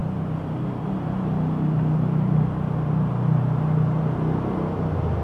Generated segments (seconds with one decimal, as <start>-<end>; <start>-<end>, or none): none